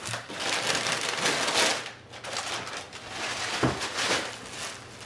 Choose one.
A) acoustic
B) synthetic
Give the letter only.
A